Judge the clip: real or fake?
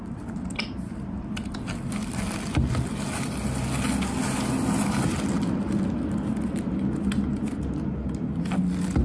real